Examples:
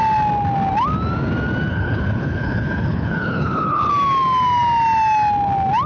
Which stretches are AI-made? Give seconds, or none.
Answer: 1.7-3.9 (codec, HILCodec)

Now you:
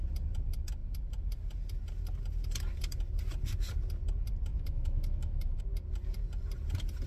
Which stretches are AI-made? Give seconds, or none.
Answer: 4.5-5.6 (autoencoder, DAC-VAE)

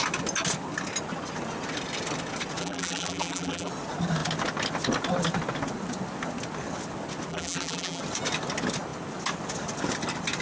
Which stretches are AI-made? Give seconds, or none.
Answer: 2.6-3.7 (vocoder, BigVGAN v2); 7.3-8.0

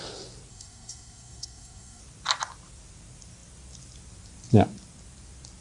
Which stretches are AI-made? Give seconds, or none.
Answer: 0.5-2.0 (codec, SNAC)

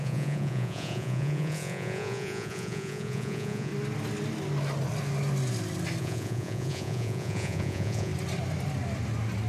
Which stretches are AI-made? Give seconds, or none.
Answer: 0.0-3.7 (vocoder, Vocos); 6.0-8.1

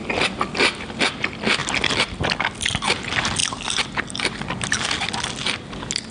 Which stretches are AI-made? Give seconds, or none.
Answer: none

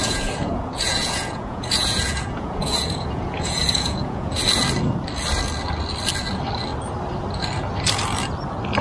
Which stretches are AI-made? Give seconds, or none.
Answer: 0.0-4.4 (vocoder, Vocos)

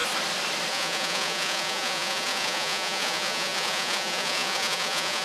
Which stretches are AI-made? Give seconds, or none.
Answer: 0.7-5.2 (vocoder, Vocos)